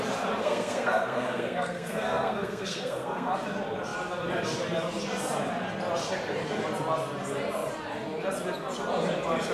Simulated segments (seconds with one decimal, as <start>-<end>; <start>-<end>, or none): 0.4-3.3